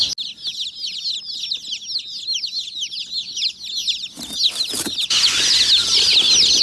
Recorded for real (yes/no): yes